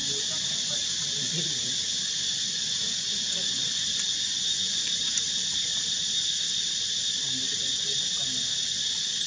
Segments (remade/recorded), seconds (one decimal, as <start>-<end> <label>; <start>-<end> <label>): 0.0-2.3 recorded; 2.3-5.2 remade; 5.2-9.3 recorded